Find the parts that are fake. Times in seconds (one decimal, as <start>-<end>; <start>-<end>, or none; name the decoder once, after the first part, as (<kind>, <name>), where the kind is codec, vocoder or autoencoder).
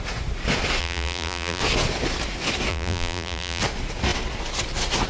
0.8-1.6 (vocoder, BigVGAN v2); 2.7-3.6